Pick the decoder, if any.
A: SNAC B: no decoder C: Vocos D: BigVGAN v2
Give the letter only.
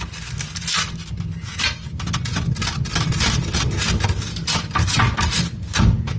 B